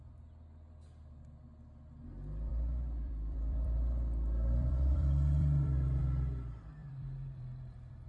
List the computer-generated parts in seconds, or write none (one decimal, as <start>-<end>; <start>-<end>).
2.5-6.0; 6.8-8.1